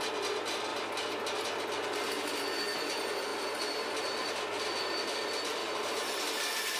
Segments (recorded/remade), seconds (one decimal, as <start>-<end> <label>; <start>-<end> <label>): 0.0-6.8 recorded